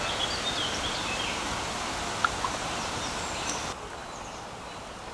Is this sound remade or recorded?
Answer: recorded